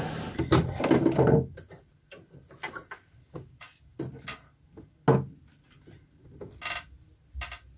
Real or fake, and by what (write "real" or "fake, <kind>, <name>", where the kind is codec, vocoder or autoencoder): real